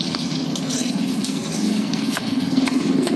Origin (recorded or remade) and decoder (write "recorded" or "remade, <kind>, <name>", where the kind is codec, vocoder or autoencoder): remade, codec, SNAC